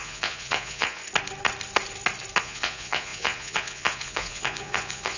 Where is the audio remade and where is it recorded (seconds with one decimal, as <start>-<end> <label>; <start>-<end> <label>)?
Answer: 0.0-1.0 remade; 1.0-2.4 recorded; 2.4-5.2 remade

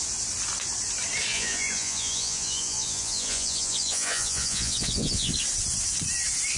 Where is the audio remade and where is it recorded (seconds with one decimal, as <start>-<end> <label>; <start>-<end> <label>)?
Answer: 0.0-1.3 recorded; 1.3-5.3 remade; 5.3-6.6 recorded

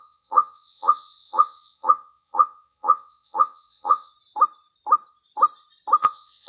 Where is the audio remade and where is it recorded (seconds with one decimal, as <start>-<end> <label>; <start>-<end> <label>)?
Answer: 0.0-4.1 remade; 4.1-6.0 recorded; 6.0-6.5 remade

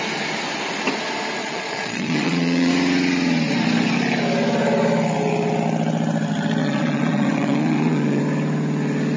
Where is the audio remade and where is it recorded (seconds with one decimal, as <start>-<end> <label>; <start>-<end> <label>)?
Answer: 0.0-1.4 recorded; 1.4-2.7 remade; 2.7-6.6 recorded; 6.6-8.2 remade; 8.2-9.2 recorded

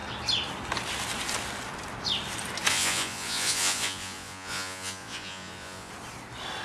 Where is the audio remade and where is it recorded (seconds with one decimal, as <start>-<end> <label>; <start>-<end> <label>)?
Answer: 0.0-2.7 recorded; 2.7-5.9 remade; 5.9-6.6 recorded

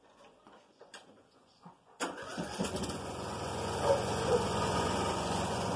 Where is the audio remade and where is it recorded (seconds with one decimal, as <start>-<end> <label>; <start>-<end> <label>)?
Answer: 0.0-5.8 remade